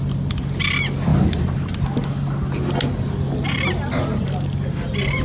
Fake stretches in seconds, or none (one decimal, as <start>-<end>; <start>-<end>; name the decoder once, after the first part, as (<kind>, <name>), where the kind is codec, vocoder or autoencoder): none